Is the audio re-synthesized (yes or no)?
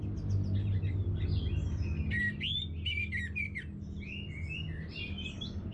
no